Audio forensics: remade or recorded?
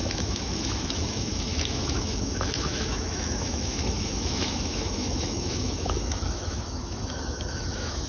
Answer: remade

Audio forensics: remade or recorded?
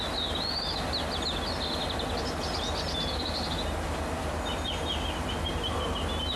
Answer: recorded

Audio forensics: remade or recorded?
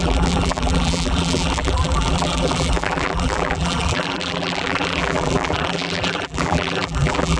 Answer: remade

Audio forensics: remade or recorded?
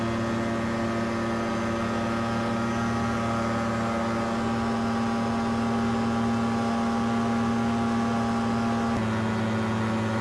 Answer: recorded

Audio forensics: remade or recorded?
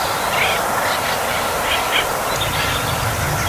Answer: recorded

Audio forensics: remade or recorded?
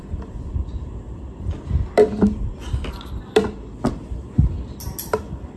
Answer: recorded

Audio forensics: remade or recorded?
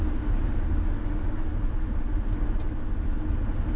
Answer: recorded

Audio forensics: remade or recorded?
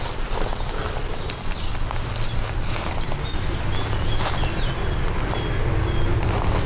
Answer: recorded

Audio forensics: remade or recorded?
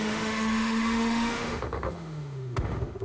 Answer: remade